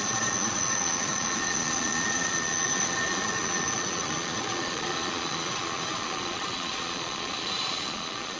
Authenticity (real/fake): fake